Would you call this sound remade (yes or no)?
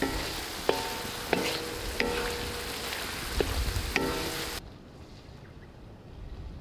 no